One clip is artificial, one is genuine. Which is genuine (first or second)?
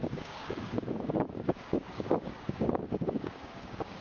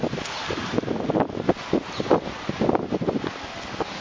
second